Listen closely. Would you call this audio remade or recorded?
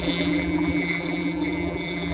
remade